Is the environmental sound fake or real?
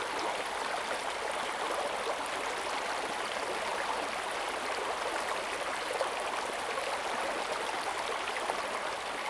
real